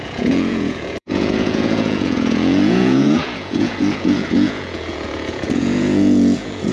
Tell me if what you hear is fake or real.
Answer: fake